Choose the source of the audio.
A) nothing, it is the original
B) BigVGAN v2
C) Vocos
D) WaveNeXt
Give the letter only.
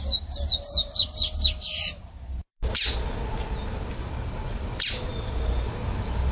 A